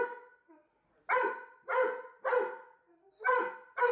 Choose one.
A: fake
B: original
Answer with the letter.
B